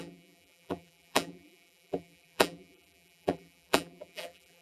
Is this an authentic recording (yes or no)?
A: no